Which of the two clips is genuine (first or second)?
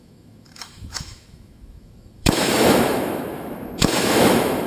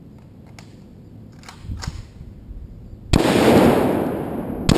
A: second